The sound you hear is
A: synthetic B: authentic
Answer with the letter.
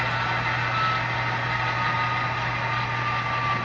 B